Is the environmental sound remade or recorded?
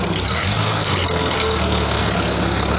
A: remade